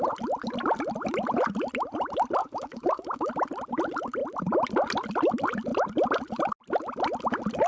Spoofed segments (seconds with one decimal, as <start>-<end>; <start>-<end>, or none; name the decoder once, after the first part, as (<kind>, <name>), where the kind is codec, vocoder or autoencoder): 2.4-3.3 (autoencoder, DAC-VAE)